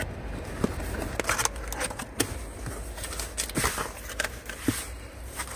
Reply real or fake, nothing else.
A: real